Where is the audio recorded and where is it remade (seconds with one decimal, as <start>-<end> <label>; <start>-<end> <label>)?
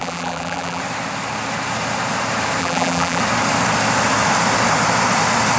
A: 0.0-0.8 remade; 0.8-2.6 recorded; 2.6-3.2 remade; 3.2-5.6 recorded